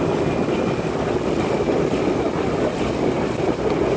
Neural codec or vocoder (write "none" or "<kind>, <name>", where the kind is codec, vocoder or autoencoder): none